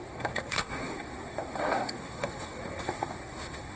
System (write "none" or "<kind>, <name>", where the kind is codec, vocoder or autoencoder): codec, SNAC